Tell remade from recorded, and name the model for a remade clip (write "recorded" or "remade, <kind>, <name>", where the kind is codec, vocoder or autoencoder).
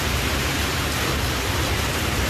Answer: remade, vocoder, BigVGAN v2